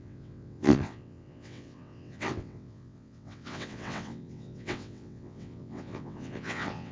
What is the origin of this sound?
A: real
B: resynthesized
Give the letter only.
B